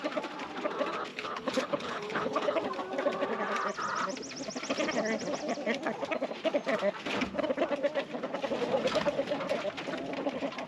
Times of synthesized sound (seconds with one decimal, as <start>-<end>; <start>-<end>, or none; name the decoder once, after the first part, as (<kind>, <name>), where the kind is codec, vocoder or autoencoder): 1.1-2.6 (codec, HILCodec)